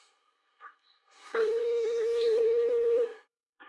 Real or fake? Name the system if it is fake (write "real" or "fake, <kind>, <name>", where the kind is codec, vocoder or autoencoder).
fake, codec, SNAC